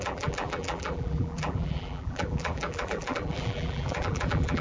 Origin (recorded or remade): remade